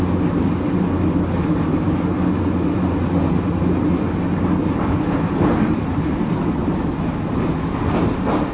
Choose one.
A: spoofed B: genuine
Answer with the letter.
B